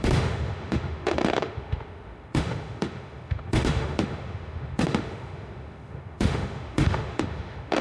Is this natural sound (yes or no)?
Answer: no